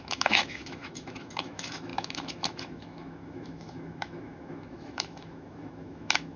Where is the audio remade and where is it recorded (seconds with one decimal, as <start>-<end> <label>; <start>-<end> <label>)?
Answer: 0.0-6.4 remade